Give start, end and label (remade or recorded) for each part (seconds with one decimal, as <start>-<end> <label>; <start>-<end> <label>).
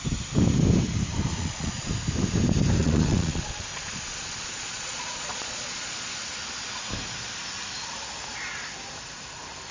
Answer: 0.0-1.3 recorded; 1.3-1.9 remade; 1.9-2.8 recorded; 2.8-6.2 remade; 6.2-9.7 recorded